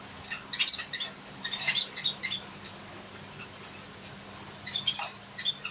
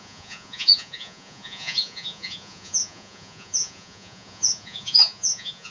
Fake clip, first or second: second